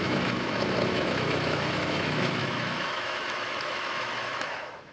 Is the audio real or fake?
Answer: fake